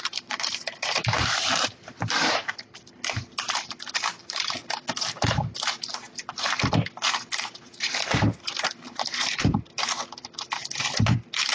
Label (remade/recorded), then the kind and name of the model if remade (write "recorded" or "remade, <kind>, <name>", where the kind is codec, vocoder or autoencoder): remade, vocoder, BigVGAN v2